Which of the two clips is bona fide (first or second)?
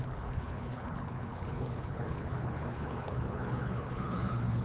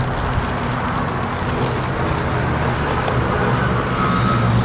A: second